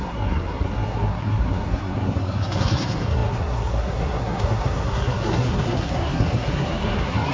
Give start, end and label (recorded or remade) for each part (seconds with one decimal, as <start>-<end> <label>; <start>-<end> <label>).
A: 0.0-7.3 remade